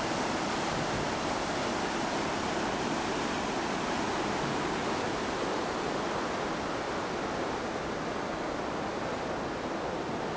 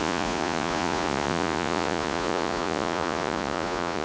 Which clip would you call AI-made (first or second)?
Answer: second